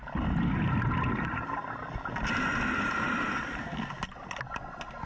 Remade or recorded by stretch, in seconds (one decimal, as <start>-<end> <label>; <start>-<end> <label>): 0.0-5.1 recorded